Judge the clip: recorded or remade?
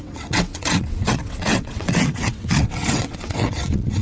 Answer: remade